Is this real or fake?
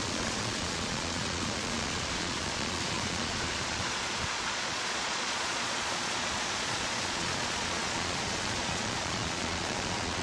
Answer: fake